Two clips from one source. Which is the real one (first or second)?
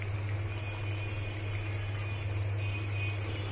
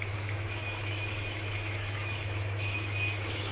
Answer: first